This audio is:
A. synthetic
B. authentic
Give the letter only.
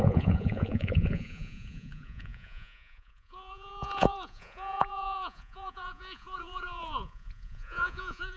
A